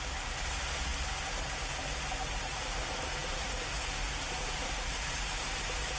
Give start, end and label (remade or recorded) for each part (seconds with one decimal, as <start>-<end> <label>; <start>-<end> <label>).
0.0-6.0 remade